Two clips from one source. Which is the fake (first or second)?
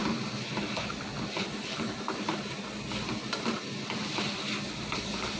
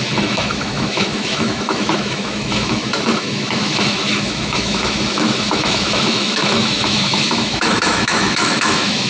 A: second